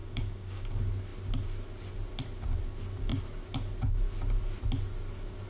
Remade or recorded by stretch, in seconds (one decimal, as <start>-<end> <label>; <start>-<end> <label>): 0.0-0.7 remade; 0.7-5.5 recorded